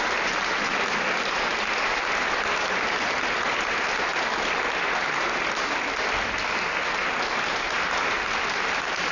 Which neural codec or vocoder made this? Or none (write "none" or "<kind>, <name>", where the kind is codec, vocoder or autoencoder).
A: none